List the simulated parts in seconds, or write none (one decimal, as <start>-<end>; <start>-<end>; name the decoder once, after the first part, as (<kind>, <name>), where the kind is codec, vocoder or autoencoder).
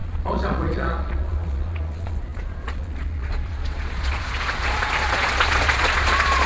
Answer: 0.0-6.5 (vocoder, Vocos)